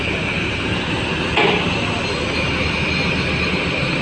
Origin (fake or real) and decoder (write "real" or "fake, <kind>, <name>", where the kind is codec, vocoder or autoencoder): real